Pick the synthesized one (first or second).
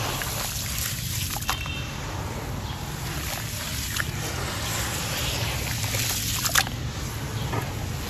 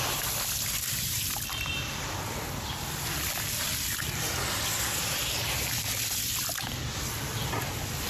second